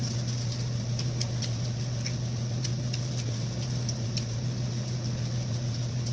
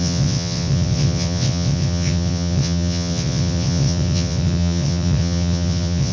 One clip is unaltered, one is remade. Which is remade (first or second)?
second